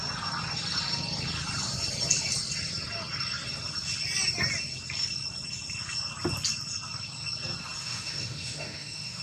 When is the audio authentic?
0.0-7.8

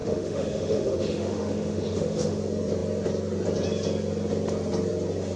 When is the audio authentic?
2.4-5.4

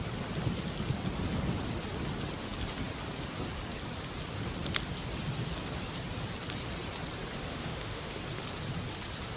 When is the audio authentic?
0.0-7.5; 8.2-9.4

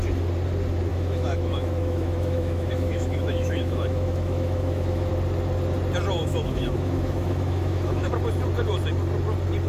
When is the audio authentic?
0.0-0.9; 5.1-6.2; 8.1-9.7

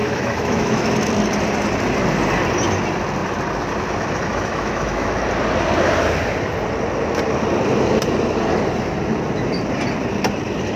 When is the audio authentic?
1.1-4.3; 5.2-10.8

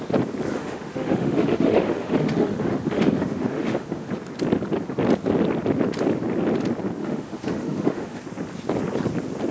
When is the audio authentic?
0.0-0.5; 4.1-7.0; 8.2-9.5

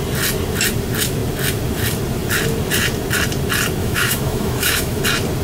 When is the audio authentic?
0.0-3.8; 5.0-5.4